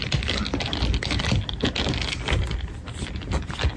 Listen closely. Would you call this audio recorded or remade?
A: recorded